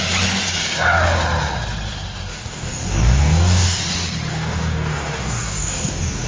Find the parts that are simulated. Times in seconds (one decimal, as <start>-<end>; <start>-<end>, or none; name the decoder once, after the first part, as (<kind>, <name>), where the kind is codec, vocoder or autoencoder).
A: 2.3-3.8 (codec, DAC); 4.3-6.3